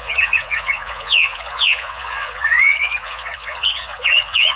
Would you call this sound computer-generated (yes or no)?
yes